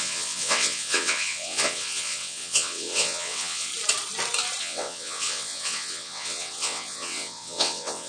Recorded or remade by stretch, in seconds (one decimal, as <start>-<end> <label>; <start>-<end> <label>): 0.0-3.7 remade; 3.7-4.6 recorded; 4.6-8.1 remade